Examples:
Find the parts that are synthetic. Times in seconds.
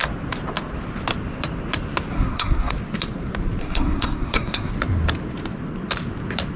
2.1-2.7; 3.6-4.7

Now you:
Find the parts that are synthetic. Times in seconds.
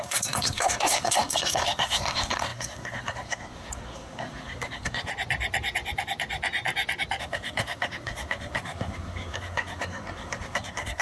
0.0-5.1; 7.2-11.0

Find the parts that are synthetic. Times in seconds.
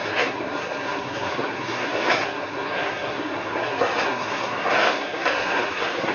0.0-6.1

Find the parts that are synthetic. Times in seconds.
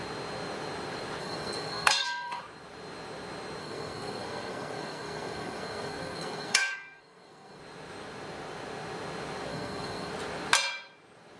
1.2-2.4; 3.6-7.6; 9.5-10.1